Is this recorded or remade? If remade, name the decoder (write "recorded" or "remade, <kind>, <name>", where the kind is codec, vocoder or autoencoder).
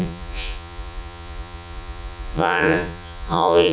remade, vocoder, Vocos